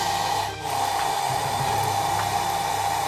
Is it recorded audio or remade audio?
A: remade